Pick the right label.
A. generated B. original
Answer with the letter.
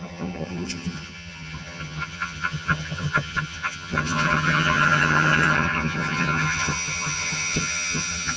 A